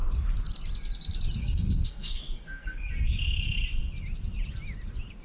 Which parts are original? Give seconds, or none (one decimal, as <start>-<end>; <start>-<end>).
0.0-1.4; 2.9-5.2

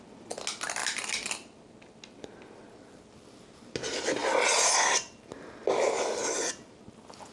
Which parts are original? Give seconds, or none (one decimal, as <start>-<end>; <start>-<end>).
0.0-7.3

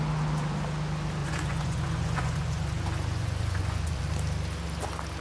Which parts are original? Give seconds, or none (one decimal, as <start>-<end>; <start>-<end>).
0.0-1.2; 4.1-5.2

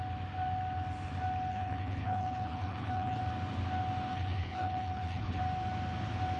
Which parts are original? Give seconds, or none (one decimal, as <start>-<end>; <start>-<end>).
0.0-1.5; 3.2-4.1; 5.4-6.4

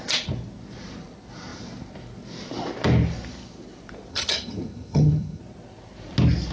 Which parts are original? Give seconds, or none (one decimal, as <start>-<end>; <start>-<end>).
0.0-4.1; 5.4-6.5